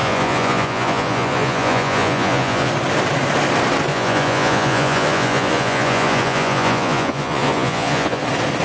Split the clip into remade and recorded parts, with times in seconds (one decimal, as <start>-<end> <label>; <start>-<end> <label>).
0.0-2.7 remade; 2.7-3.9 recorded; 3.9-8.2 remade; 8.2-8.6 recorded